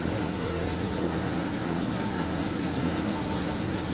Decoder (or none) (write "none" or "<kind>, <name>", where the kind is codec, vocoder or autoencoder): codec, SNAC